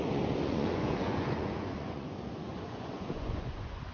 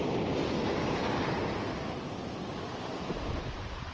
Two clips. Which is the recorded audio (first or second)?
second